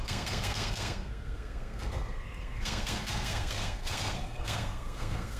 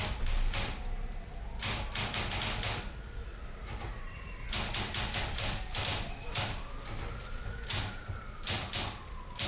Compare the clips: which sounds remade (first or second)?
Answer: first